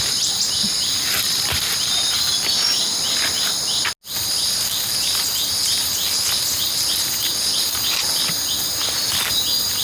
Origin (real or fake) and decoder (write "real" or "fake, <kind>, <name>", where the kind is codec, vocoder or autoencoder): real